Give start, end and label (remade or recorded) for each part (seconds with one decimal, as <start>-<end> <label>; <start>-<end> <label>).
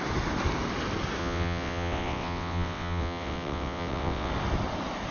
0.0-1.2 recorded; 1.2-4.3 remade; 4.3-5.1 recorded